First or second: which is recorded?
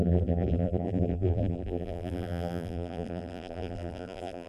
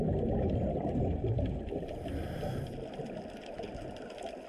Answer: second